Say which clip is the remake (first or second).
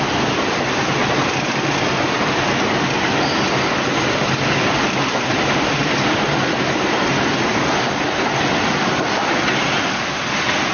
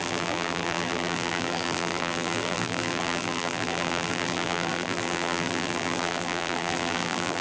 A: second